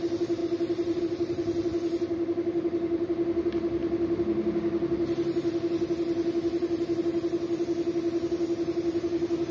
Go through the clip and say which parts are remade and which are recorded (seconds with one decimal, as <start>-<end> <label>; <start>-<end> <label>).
0.0-9.5 recorded